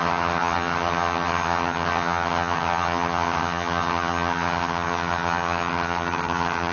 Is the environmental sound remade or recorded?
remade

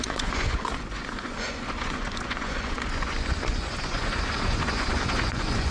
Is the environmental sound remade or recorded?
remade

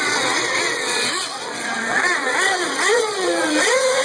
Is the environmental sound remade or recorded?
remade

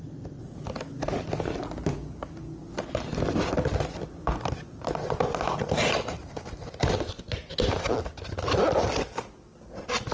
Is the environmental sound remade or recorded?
recorded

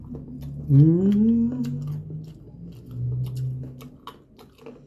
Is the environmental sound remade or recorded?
recorded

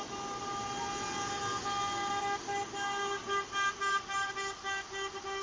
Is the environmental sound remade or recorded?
recorded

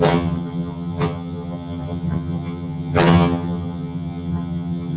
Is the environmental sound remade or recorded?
remade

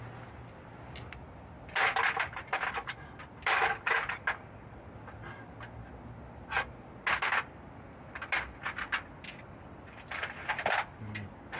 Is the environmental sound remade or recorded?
recorded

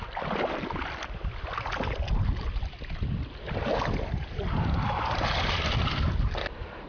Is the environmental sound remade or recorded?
recorded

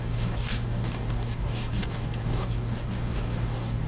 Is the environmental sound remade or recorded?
remade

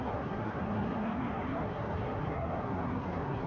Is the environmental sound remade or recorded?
remade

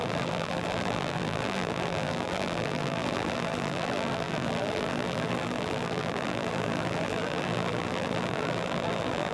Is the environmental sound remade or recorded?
remade